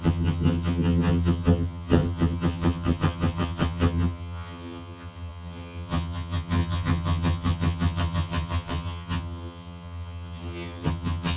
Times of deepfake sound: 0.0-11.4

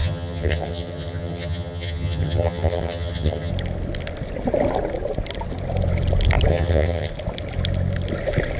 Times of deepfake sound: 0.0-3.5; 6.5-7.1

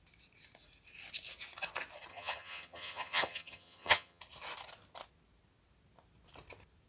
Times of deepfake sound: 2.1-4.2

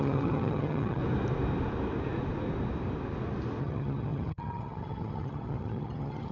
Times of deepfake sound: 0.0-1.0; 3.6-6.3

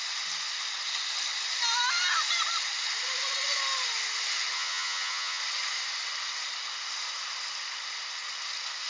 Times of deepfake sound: 4.5-5.4

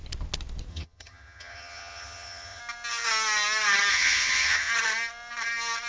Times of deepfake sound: 0.7-2.6; 3.9-4.7